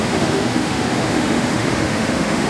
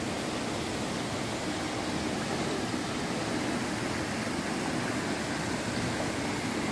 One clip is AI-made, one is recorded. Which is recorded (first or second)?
second